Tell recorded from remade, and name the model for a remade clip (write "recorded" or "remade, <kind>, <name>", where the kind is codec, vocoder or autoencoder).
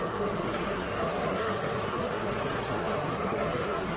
remade, codec, SNAC